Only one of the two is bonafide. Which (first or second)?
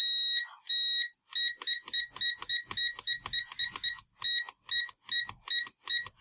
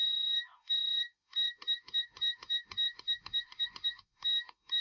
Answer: first